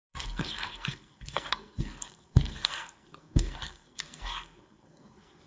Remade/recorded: remade